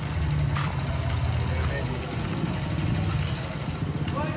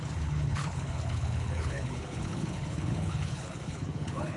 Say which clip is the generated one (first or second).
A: second